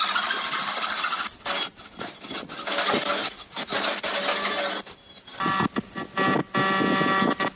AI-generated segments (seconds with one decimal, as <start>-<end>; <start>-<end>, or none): none